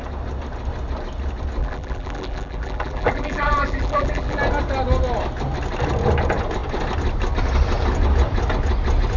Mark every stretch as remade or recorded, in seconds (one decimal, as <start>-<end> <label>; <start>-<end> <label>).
0.0-1.6 recorded; 1.6-4.4 remade; 4.4-9.2 recorded

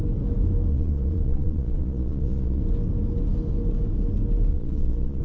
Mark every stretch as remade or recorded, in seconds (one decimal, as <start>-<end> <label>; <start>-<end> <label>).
0.0-0.7 recorded; 0.7-2.6 remade; 2.6-4.5 recorded; 4.5-5.2 remade

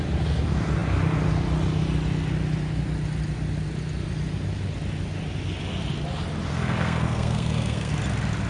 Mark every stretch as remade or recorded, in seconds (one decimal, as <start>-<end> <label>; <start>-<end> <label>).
0.0-6.5 recorded; 6.5-7.9 remade; 7.9-8.5 recorded

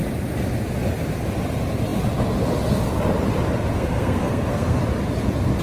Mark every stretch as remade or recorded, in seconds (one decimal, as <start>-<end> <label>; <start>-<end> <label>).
0.0-3.7 recorded; 3.7-4.8 remade; 4.8-5.6 recorded

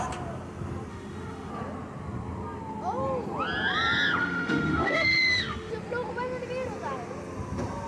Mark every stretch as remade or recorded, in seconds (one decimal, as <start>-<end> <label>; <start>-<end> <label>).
0.0-0.9 recorded; 0.9-1.5 remade; 1.5-4.2 recorded; 4.2-5.7 remade; 5.7-7.9 recorded

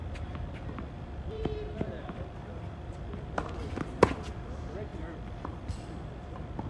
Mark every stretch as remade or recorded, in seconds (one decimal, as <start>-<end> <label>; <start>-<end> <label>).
0.0-6.7 remade

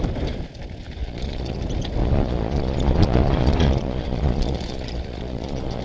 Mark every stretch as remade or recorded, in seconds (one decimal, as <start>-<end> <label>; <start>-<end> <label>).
0.0-1.0 recorded; 1.0-1.6 remade; 1.6-2.0 recorded; 2.0-5.8 remade

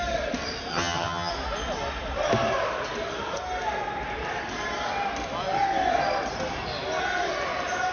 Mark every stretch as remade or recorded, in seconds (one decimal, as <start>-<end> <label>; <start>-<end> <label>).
0.0-0.7 recorded; 0.7-1.3 remade; 1.3-7.9 recorded